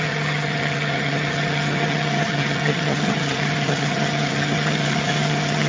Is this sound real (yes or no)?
no